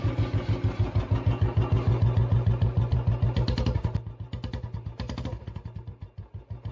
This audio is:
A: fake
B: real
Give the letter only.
B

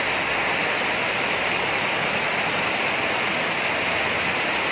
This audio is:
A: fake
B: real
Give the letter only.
B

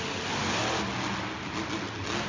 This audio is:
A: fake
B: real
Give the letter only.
B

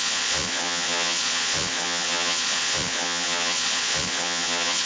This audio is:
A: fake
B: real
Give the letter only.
A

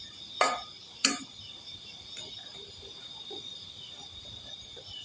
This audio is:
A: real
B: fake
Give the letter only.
B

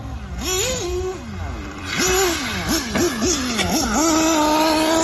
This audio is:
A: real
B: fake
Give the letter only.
A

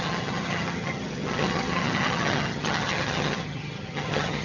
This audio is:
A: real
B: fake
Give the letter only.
B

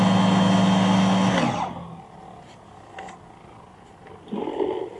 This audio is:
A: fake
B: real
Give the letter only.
B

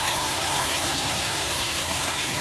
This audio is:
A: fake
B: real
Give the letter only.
A